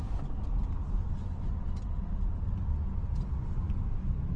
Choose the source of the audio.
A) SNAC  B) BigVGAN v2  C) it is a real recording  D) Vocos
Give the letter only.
C